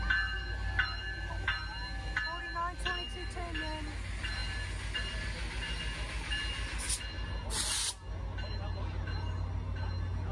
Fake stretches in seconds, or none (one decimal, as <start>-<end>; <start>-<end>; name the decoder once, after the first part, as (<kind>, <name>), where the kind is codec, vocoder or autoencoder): none

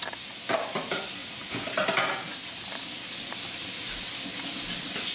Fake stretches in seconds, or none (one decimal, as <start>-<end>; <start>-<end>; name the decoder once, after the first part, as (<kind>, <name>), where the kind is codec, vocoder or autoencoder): 1.2-4.0 (vocoder, BigVGAN v2)

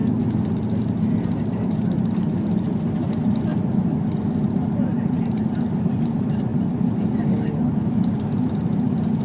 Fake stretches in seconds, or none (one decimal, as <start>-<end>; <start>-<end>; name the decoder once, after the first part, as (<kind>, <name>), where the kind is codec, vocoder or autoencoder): 1.4-3.5 (vocoder, BigVGAN v2); 4.8-6.5; 8.2-9.2

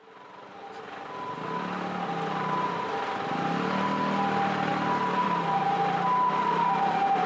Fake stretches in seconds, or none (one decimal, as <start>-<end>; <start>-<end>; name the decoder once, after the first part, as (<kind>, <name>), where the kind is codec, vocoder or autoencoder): 4.7-5.4 (vocoder, BigVGAN v2)

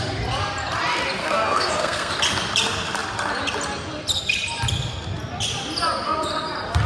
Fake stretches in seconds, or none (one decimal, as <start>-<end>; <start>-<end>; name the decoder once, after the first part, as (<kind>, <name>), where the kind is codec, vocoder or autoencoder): 1.2-2.1 (codec, SNAC)

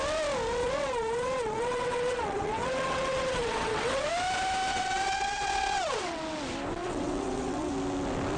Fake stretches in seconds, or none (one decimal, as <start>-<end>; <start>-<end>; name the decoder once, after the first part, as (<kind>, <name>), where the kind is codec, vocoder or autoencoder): 0.6-4.1 (vocoder, WaveNeXt); 4.7-6.2; 6.8-7.7

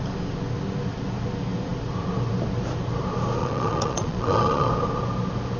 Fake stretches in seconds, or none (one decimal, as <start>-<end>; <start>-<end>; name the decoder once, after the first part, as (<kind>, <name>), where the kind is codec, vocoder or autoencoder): 3.4-4.7 (vocoder, Vocos)

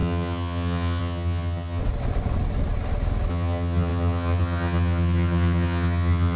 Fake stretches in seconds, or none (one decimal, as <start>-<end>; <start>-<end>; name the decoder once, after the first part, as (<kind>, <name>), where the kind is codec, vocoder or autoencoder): 0.0-1.8 (vocoder, HiFi-GAN); 3.3-6.4